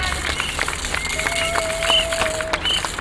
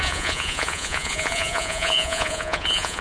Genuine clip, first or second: first